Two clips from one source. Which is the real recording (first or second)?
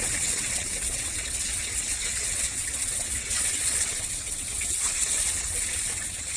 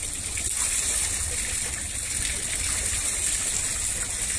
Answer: second